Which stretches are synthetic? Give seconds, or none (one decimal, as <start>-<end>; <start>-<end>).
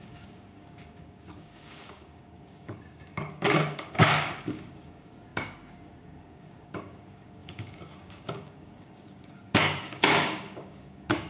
0.0-11.3